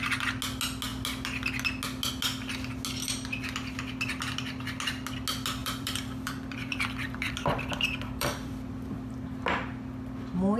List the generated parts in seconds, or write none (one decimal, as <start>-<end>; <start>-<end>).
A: 5.6-9.1